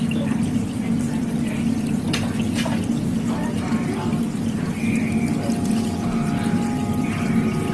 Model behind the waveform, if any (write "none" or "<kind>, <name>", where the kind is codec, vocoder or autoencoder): none